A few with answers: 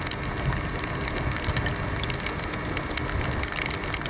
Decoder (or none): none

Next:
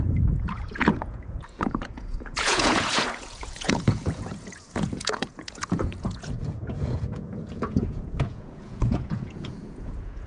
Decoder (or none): vocoder, Vocos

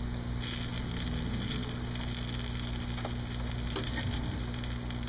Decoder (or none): none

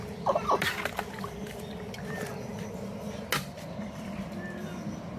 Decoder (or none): none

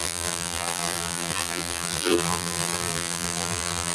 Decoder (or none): vocoder, BigVGAN v2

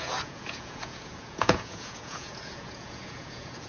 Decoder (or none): vocoder, Vocos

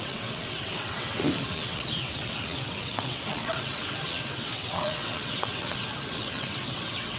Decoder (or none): vocoder, WaveNeXt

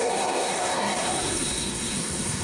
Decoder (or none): codec, SNAC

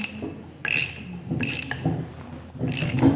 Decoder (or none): none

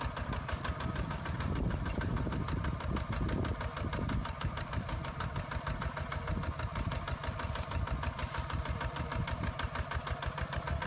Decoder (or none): vocoder, BigVGAN v2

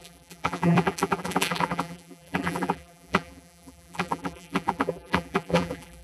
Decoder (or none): vocoder, BigVGAN v2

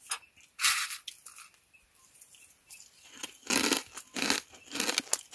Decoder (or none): none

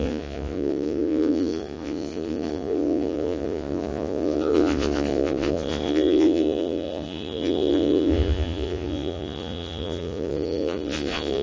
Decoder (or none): vocoder, Vocos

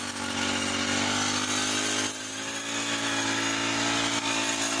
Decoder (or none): none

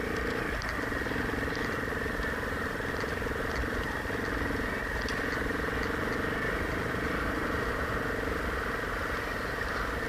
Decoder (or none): none